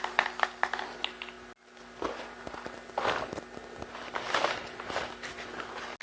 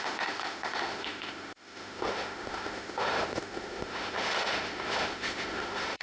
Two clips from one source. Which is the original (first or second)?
first